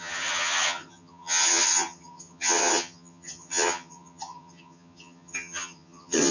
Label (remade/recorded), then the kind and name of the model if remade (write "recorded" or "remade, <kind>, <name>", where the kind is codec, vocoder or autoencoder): remade, vocoder, HiFi-GAN